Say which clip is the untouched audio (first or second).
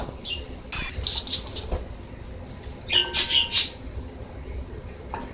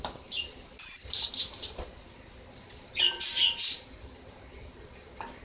first